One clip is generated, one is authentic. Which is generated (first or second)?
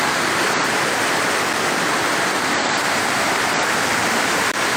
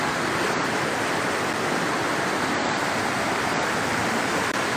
first